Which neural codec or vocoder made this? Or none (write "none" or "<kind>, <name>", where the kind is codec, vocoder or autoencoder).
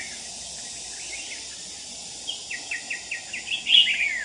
none